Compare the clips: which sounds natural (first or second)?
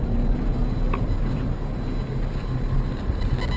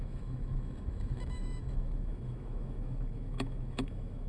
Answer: first